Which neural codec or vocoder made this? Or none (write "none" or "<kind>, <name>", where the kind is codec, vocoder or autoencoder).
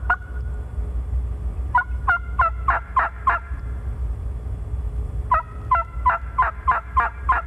none